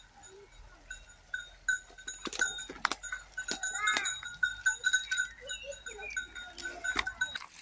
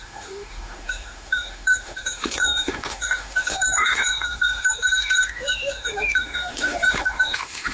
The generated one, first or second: second